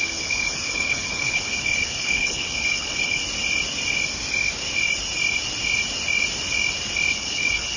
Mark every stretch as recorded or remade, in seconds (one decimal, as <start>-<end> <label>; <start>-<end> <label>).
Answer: 0.0-3.2 remade; 3.2-7.1 recorded; 7.1-7.8 remade